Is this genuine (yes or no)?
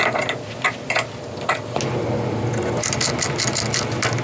yes